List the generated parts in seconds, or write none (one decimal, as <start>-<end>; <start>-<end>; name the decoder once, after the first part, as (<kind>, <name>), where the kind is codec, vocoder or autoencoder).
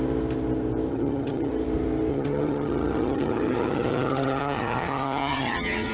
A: 0.9-1.5 (vocoder, HiFi-GAN); 2.1-5.9